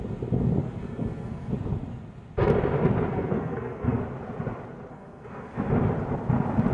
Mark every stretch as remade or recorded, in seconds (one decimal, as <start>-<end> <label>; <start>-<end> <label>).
0.0-0.6 recorded; 0.6-1.5 remade; 1.5-3.1 recorded; 3.1-4.0 remade; 4.0-4.9 recorded; 4.9-5.7 remade; 5.7-6.7 recorded